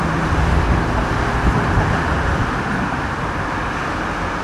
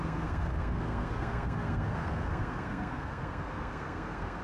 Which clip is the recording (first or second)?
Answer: first